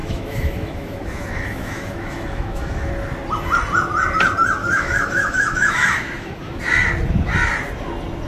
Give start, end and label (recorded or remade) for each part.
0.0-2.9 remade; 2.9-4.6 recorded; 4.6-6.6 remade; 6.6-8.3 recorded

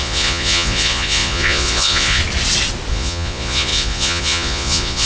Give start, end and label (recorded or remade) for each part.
0.0-2.2 remade; 2.2-2.9 recorded; 2.9-5.1 remade

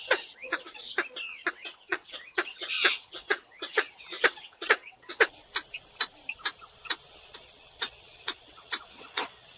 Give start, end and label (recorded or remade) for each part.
0.0-0.9 remade; 0.9-1.5 recorded; 1.5-5.4 remade; 5.4-6.8 recorded; 6.8-9.6 remade

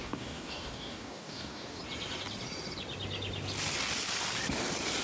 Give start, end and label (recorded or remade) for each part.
0.0-1.8 remade; 1.8-5.0 recorded

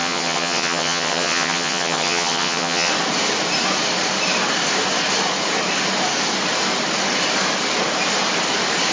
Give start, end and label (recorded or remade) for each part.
0.0-2.9 remade; 2.9-8.9 recorded

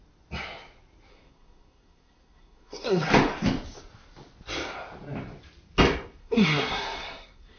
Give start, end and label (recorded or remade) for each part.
0.0-1.1 recorded; 1.1-3.1 remade; 3.1-6.2 recorded; 6.2-7.6 remade

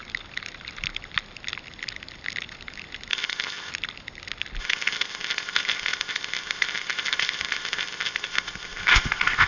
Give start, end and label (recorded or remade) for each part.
0.0-3.1 recorded; 3.1-3.7 remade; 3.7-4.6 recorded; 4.6-9.5 remade

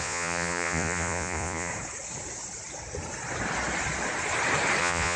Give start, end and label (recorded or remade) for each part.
0.0-1.7 remade; 1.7-4.8 recorded; 4.8-5.2 remade